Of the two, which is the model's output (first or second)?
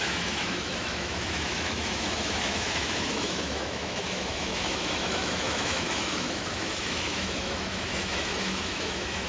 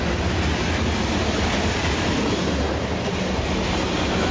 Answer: first